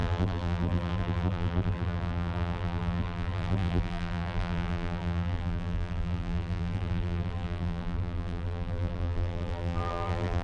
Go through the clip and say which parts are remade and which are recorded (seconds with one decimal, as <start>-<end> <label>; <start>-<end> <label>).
0.0-10.4 remade